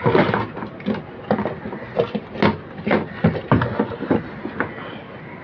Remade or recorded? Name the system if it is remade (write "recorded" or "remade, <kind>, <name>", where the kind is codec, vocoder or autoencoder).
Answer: recorded